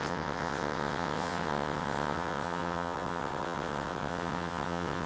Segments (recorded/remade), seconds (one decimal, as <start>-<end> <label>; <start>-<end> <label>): 0.0-5.1 remade

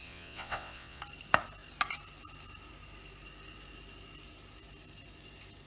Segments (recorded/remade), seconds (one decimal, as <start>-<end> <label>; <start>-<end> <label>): 0.0-1.0 remade; 1.0-5.7 recorded

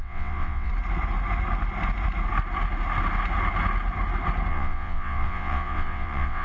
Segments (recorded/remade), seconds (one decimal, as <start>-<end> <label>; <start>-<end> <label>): 0.0-0.7 remade; 0.7-4.5 recorded; 4.5-6.4 remade